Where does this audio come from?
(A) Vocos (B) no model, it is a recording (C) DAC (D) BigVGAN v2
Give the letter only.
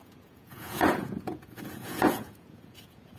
A